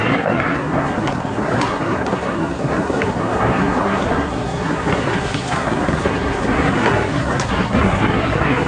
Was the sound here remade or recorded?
remade